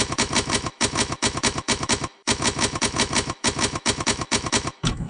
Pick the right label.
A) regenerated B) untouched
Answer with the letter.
A